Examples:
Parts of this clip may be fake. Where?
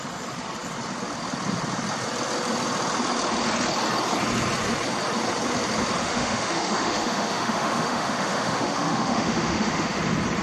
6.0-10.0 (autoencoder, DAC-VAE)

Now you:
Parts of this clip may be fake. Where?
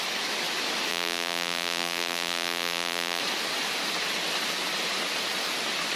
0.9-3.2 (vocoder, BigVGAN v2)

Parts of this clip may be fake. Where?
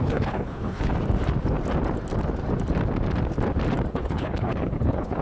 0.0-0.9 (codec, HILCodec); 3.9-5.2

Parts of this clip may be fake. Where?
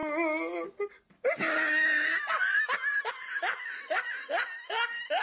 none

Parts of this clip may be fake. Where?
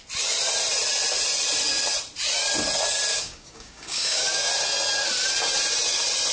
3.1-4.5 (codec, DAC)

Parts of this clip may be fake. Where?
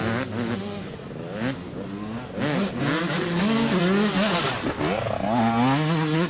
none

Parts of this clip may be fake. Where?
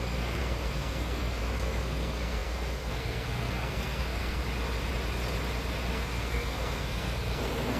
0.0-4.4 (codec, SNAC); 5.9-7.8